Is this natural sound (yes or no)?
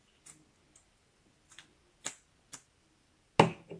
yes